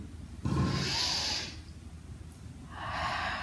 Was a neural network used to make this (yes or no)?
no